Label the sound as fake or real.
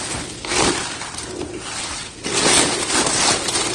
real